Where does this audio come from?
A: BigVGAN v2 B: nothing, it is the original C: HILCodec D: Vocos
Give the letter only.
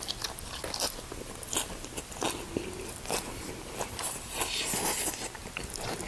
B